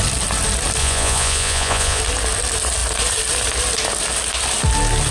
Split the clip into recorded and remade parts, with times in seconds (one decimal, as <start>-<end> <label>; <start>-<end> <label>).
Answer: 0.0-0.8 recorded; 0.8-2.0 remade; 2.0-5.1 recorded